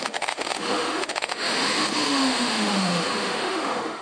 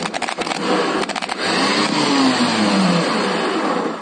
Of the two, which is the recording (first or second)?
second